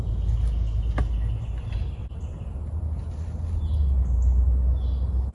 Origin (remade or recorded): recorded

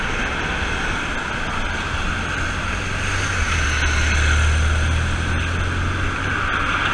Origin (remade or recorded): recorded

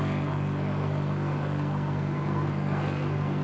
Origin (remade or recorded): remade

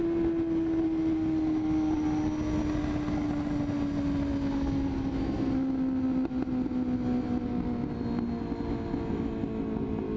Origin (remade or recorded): recorded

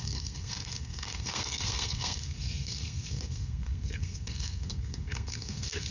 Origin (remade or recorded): remade